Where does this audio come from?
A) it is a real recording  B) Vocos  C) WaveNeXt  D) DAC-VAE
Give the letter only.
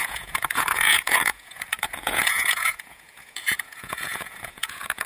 B